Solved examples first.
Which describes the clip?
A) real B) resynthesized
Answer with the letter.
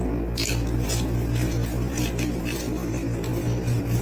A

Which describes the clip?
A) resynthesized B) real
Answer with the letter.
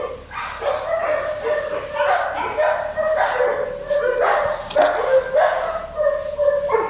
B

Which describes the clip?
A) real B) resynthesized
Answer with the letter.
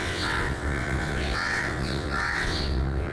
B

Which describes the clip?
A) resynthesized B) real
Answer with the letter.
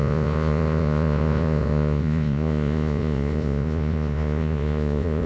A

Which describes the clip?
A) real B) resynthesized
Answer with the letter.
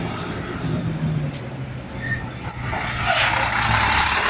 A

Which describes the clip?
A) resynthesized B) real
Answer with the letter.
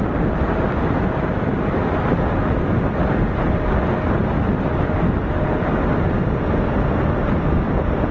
B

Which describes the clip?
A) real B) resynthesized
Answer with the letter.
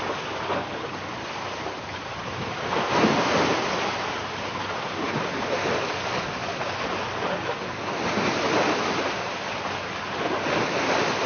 A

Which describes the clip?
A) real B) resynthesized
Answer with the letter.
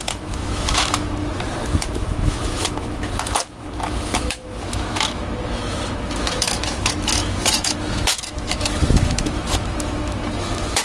B